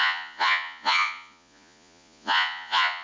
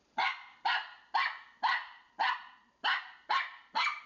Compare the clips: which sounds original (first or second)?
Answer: second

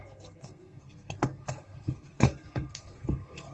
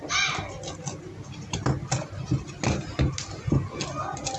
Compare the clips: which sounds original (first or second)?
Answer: second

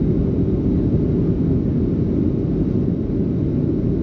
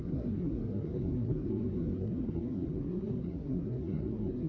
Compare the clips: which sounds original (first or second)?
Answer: first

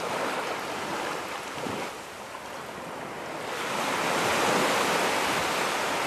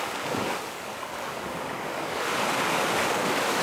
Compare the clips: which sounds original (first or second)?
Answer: first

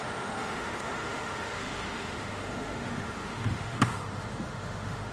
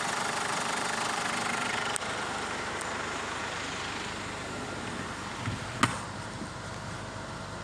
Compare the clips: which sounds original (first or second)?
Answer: second